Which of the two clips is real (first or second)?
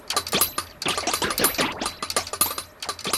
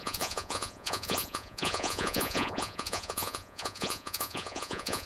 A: first